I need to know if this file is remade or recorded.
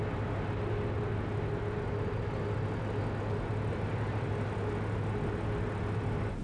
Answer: recorded